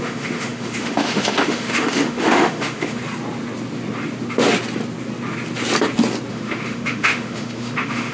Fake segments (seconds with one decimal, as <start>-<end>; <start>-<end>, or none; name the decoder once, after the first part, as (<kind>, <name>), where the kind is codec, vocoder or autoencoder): 0.0-3.0 (autoencoder, DAC-VAE); 6.3-8.1